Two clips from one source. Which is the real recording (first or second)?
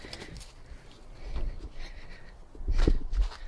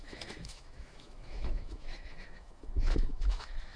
first